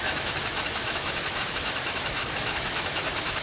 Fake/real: fake